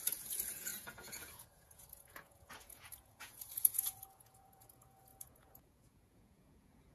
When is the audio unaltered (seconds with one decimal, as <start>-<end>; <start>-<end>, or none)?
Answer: none